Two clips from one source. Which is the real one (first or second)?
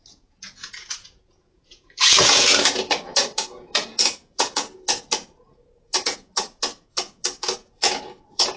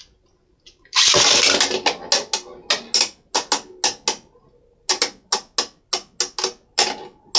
second